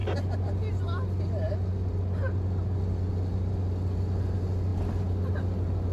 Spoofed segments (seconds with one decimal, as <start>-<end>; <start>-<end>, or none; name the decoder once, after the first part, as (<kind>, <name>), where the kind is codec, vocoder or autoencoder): none